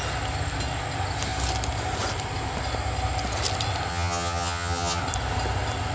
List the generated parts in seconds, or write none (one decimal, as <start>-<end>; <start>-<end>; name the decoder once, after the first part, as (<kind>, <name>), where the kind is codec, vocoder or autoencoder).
3.9-5.0 (vocoder, HiFi-GAN)